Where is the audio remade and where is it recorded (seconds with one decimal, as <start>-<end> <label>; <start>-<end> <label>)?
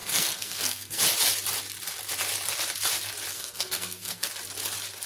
0.0-1.0 remade; 1.0-3.3 recorded; 3.3-4.3 remade; 4.3-5.1 recorded